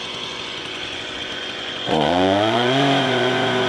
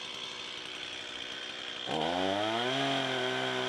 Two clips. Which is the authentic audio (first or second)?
second